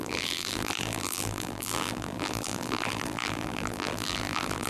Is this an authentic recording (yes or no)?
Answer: no